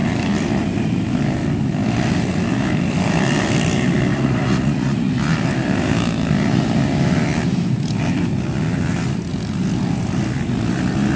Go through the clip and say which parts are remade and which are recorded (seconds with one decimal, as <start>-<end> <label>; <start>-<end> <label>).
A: 0.0-4.1 recorded; 4.1-5.1 remade; 5.1-11.2 recorded